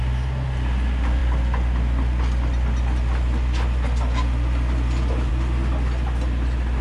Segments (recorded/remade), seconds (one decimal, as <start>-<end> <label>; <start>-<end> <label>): 0.0-6.8 recorded